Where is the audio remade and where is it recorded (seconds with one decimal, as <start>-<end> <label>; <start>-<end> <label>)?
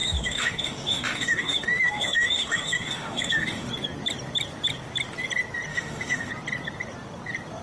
0.0-3.7 remade; 3.7-5.7 recorded; 5.7-6.3 remade; 6.3-7.6 recorded